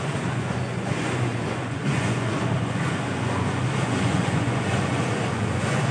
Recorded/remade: remade